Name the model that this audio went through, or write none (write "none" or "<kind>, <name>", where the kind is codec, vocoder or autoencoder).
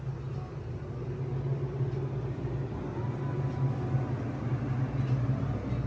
none